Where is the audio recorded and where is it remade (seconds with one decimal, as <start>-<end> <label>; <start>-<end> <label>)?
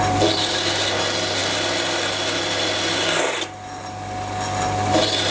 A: 0.0-5.3 recorded